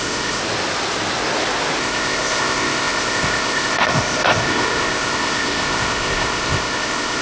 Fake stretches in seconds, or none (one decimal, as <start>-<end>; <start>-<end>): 0.0-0.4; 1.8-7.2